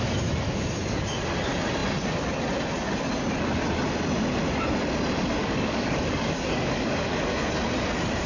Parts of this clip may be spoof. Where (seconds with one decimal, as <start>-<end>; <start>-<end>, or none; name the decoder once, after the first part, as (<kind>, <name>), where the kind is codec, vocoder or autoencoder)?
5.4-7.2 (codec, DAC)